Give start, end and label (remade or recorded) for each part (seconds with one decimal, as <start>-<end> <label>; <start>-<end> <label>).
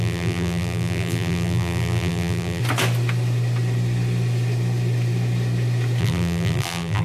0.0-2.6 remade; 2.6-6.0 recorded; 6.0-7.0 remade